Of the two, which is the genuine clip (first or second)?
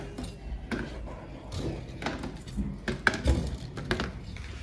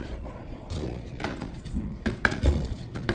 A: first